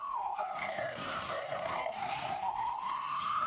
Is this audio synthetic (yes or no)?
yes